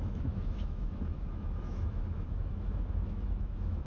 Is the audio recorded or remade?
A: remade